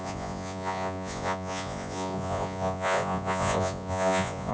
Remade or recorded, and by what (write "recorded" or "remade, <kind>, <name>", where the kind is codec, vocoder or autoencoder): remade, vocoder, Vocos